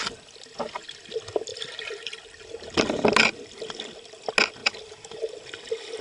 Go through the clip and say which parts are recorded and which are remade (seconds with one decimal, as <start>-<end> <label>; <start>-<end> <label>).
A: 0.0-1.5 recorded; 1.5-2.2 remade; 2.2-4.6 recorded; 4.6-5.3 remade; 5.3-6.0 recorded